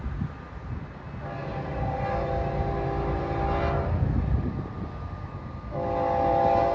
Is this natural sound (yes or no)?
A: yes